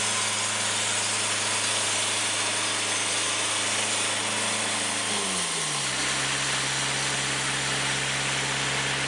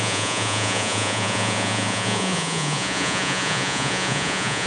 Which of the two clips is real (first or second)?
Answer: first